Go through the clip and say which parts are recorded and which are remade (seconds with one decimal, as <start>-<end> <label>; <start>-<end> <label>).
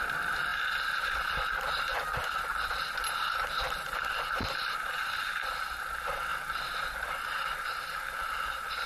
0.0-8.9 recorded